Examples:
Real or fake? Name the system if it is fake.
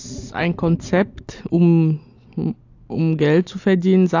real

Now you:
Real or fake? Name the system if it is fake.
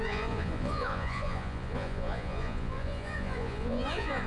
fake, vocoder, Vocos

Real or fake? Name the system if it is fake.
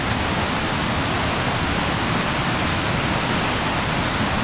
real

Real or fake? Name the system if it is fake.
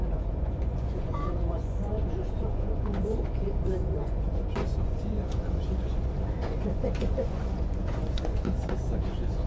fake, vocoder, Vocos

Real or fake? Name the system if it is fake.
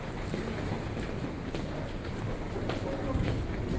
real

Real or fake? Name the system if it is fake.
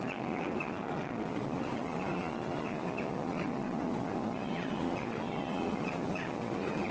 fake, vocoder, Vocos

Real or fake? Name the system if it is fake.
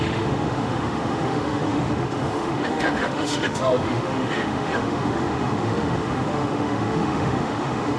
fake, autoencoder, DAC-VAE